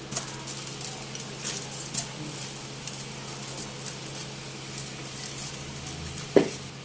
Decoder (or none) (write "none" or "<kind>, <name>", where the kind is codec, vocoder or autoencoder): none